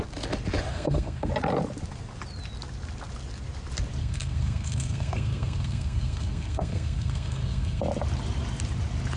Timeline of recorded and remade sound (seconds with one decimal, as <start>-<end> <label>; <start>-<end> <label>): 0.0-0.7 recorded; 0.7-1.3 remade; 1.3-4.0 recorded; 4.0-7.8 remade; 7.8-9.2 recorded